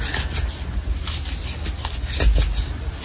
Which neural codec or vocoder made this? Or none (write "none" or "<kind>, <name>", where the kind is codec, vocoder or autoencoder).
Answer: none